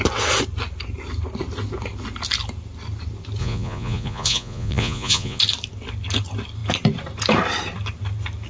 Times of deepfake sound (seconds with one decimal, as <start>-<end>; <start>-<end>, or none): 3.4-5.4